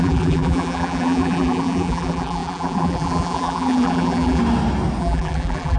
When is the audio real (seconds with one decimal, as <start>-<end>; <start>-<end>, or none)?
4.4-5.0